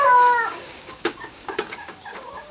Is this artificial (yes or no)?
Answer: yes